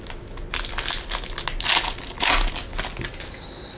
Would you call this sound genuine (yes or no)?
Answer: yes